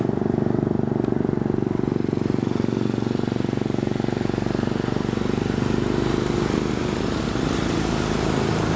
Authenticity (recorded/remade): recorded